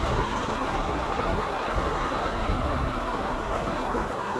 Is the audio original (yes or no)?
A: no